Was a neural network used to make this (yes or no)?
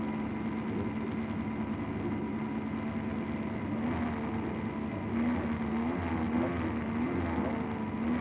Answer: no